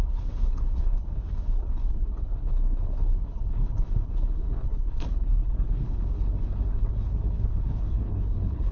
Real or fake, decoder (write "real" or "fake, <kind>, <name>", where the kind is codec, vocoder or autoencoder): fake, codec, HILCodec